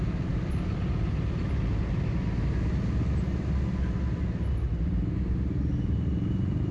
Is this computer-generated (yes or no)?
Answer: no